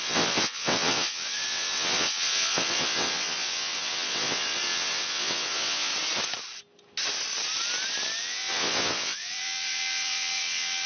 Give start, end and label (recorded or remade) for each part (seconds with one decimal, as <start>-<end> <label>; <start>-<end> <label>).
0.0-5.9 remade; 5.9-8.2 recorded; 8.2-10.9 remade